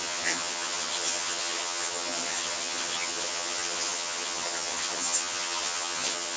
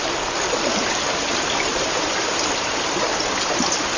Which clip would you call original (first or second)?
second